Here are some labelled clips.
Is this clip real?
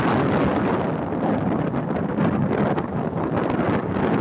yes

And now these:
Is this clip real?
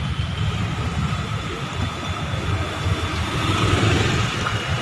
yes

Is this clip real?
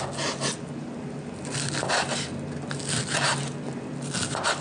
yes